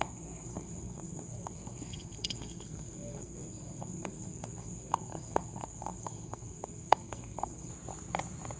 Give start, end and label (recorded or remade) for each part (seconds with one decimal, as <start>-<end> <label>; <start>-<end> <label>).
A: 0.0-7.7 remade; 7.7-8.6 recorded